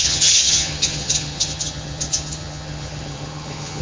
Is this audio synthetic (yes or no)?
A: yes